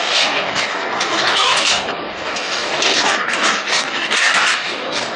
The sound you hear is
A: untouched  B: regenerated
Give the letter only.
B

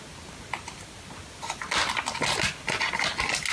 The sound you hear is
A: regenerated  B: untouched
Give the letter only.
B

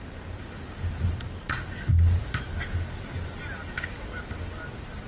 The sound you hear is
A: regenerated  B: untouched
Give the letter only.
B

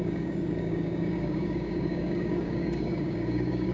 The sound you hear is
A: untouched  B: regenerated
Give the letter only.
B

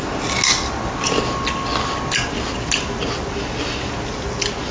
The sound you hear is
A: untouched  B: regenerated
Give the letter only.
A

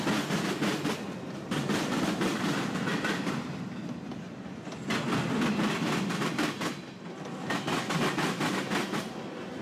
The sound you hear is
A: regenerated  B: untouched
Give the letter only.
B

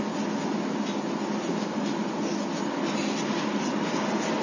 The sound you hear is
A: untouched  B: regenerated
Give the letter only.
A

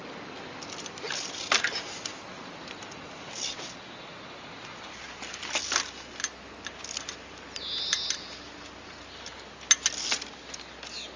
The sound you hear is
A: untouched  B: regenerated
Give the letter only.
A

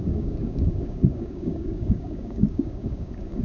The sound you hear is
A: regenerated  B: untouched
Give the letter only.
A